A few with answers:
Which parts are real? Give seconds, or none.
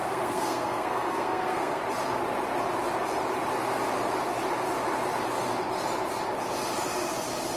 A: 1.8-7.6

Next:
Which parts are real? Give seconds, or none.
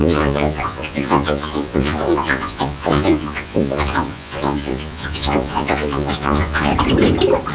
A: 6.7-7.5